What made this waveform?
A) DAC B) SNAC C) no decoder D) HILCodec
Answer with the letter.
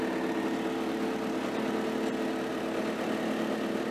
C